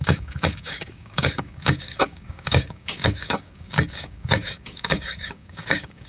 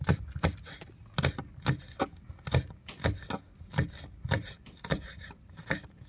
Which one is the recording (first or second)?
second